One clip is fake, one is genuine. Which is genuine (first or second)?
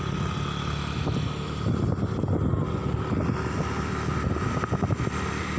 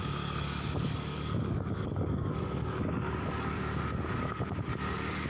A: first